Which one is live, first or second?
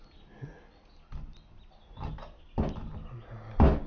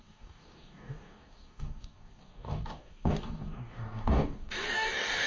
first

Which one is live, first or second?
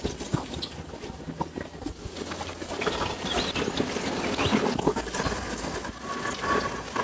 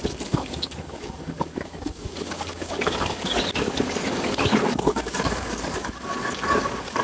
first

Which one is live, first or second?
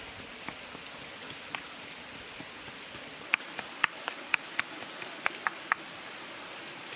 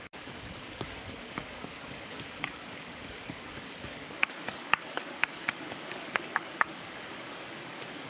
first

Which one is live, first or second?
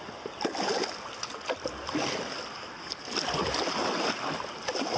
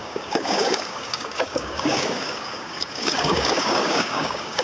first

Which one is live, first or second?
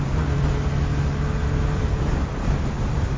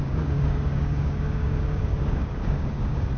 first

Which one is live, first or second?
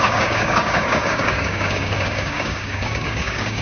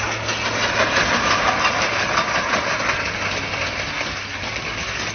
second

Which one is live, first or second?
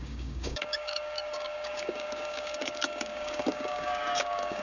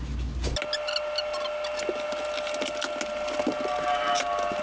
second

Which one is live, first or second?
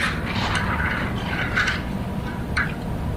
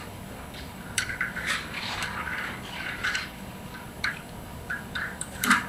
first